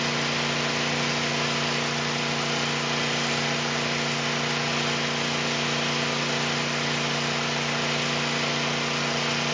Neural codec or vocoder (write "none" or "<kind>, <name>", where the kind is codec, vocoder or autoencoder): none